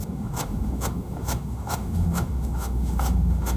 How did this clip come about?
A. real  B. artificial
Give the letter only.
B